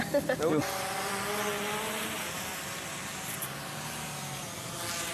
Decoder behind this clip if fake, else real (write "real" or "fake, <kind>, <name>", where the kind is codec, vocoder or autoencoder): fake, vocoder, BigVGAN v2